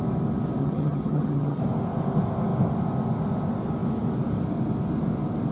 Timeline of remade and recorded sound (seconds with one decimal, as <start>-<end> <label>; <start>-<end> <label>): 0.0-0.6 recorded; 0.6-1.6 remade; 1.6-5.5 recorded